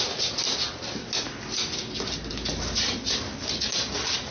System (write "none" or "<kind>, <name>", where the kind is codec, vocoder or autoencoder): none